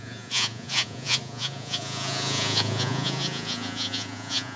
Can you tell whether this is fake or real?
fake